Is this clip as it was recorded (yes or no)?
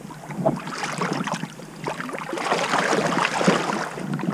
yes